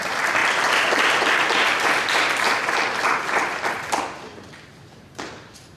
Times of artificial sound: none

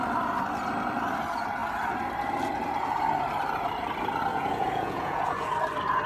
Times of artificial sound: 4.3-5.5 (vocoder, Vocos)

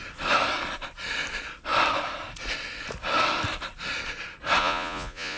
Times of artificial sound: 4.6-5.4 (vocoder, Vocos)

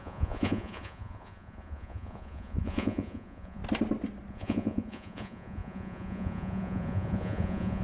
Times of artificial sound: 0.0-3.6 (vocoder, Vocos); 4.3-7.8

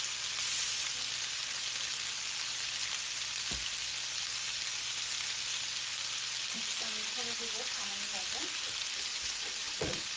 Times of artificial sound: 9.1-10.2 (vocoder, Vocos)